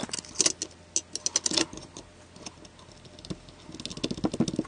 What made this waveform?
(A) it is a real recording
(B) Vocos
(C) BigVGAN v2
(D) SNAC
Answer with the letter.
A